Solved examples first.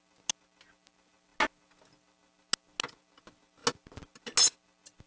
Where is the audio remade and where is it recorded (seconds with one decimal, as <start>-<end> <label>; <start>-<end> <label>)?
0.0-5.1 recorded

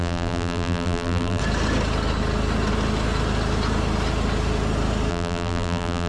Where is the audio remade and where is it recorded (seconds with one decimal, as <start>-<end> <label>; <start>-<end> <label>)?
0.0-1.4 remade; 1.4-5.1 recorded; 5.1-6.1 remade

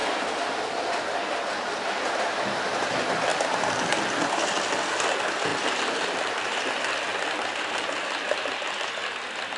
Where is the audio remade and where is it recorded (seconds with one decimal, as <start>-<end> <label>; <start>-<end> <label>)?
0.0-3.3 recorded; 3.3-4.0 remade; 4.0-9.6 recorded